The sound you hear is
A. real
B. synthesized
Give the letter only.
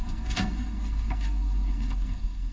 B